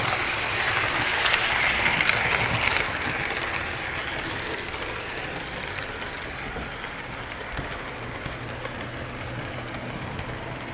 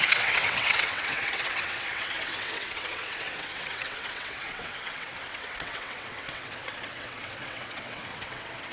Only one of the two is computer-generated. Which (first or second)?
second